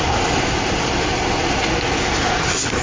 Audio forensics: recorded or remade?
recorded